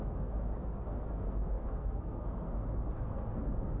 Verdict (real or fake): fake